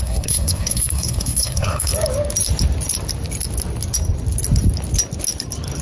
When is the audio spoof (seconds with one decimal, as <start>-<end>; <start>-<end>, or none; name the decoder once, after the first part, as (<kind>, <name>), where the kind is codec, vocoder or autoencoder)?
0.0-1.9 (codec, SNAC)

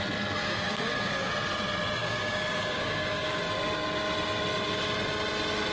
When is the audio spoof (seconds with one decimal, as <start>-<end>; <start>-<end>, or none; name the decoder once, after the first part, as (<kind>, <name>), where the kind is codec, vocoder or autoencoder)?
0.4-1.3 (codec, DAC); 2.0-3.4

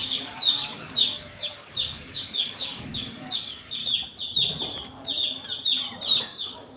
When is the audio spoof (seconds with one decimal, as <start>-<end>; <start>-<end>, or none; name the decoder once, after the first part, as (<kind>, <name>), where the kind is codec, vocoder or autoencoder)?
0.0-3.8 (codec, DAC); 6.2-6.8

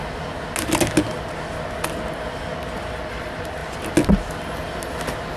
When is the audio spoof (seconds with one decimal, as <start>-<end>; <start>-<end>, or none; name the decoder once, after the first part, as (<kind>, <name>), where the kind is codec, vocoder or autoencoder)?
none